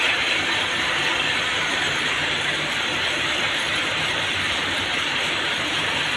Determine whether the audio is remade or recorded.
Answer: remade